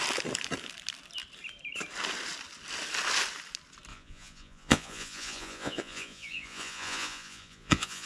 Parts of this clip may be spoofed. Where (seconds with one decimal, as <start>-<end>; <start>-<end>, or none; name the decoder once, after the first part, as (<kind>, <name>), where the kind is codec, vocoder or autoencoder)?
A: 3.9-8.1 (vocoder, Vocos)